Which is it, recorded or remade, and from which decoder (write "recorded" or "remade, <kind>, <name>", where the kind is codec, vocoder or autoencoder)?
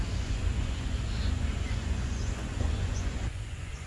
remade, vocoder, Vocos